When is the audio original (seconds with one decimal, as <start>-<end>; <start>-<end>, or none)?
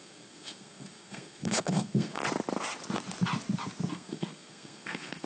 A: 2.2-3.9